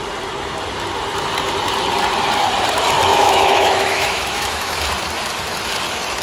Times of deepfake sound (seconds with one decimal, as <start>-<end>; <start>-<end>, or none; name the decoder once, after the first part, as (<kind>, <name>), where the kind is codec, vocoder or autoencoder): 3.1-4.8 (autoencoder, DAC-VAE)